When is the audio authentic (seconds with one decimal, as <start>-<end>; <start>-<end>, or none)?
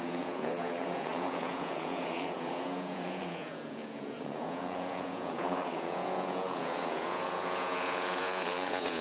none